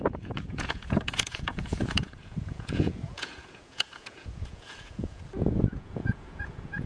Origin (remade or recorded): remade